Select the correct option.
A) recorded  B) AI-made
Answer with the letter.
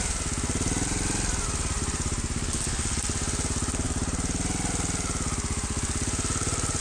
A